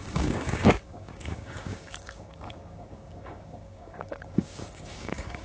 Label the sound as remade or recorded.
remade